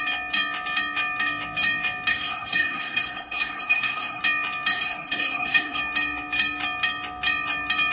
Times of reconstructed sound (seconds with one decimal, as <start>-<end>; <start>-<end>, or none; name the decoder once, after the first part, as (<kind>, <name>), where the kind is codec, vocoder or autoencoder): 2.1-4.2 (codec, SNAC); 4.7-5.8